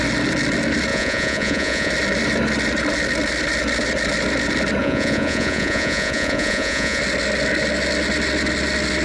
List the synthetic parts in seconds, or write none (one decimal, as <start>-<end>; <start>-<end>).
0.9-1.9; 4.8-7.0